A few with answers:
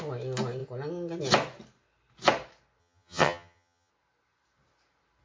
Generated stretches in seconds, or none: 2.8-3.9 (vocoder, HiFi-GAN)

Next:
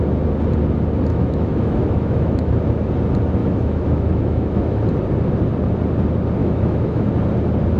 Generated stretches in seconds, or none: 1.1-2.5 (autoencoder, DAC-VAE); 3.4-4.8; 6.4-7.1

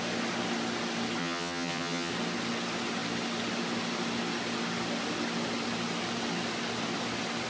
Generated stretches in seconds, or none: 1.2-2.1 (vocoder, HiFi-GAN)

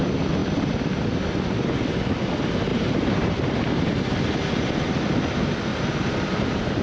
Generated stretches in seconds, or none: 2.7-4.0 (vocoder, BigVGAN v2); 5.7-6.8

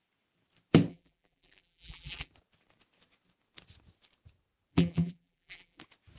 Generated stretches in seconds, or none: 0.9-2.3 (vocoder, BigVGAN v2); 4.7-5.8